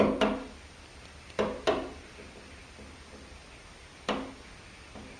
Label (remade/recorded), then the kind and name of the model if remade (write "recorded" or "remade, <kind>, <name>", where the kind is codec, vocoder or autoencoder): recorded